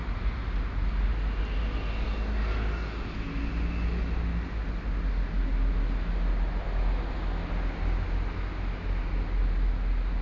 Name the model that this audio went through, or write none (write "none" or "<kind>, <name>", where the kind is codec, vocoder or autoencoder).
none